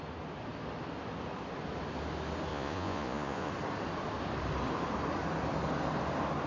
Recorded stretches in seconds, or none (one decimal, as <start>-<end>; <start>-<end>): 0.0-2.5; 3.5-6.5